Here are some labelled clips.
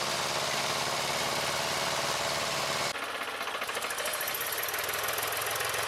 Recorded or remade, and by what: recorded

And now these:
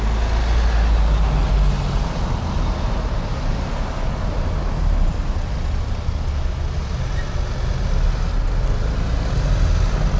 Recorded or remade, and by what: recorded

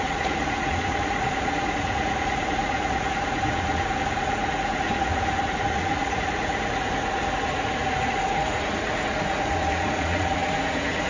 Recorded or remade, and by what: remade, vocoder, Vocos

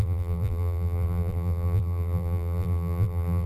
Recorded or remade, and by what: remade, vocoder, BigVGAN v2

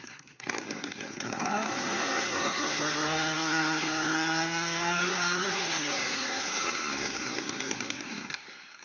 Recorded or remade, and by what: remade, codec, SNAC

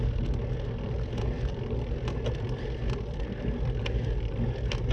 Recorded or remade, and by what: recorded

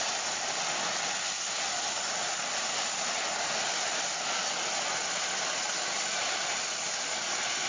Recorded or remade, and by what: recorded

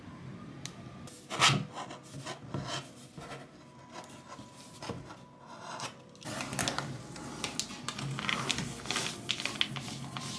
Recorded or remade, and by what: recorded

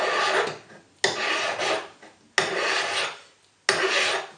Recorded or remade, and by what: recorded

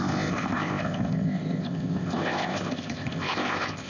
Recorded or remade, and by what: remade, codec, ZipCodec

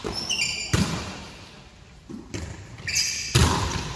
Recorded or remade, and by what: recorded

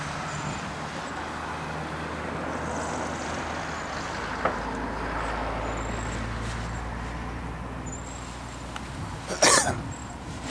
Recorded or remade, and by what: recorded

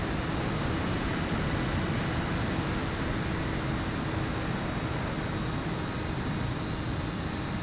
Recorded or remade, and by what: recorded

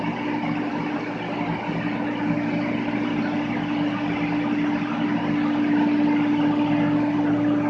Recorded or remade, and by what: recorded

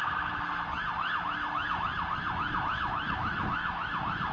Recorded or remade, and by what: remade, autoencoder, DAC-VAE